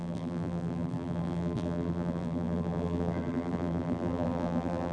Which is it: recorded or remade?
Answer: remade